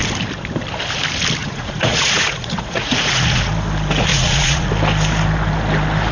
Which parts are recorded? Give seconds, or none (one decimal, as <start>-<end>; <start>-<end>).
0.0-1.4; 3.5-4.1; 4.7-6.1